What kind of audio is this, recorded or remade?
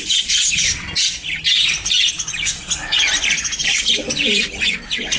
recorded